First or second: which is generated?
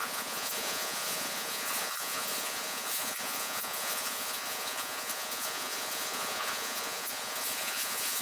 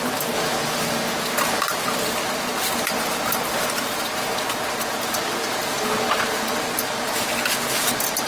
first